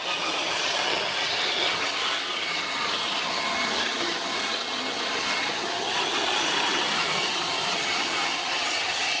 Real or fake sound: fake